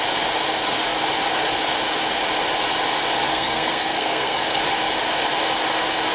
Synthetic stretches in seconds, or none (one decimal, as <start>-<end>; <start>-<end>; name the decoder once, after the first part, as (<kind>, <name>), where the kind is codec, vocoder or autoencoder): 3.3-4.6 (codec, SNAC)